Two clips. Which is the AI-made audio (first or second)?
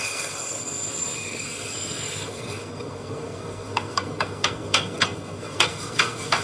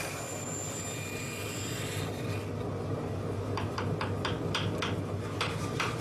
first